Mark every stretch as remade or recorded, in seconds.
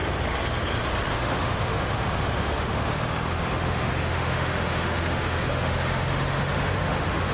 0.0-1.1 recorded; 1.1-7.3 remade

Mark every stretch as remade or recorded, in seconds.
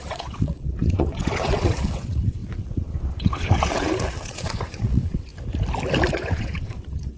0.0-5.3 remade; 5.3-6.1 recorded; 6.1-7.2 remade